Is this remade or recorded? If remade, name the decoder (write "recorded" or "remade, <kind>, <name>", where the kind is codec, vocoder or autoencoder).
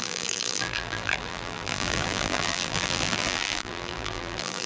remade, vocoder, BigVGAN v2